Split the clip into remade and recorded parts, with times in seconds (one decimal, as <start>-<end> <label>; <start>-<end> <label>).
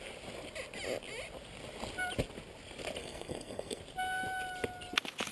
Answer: 0.0-3.0 recorded; 3.0-3.8 remade; 3.8-5.3 recorded